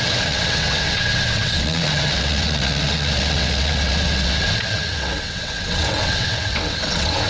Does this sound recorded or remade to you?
remade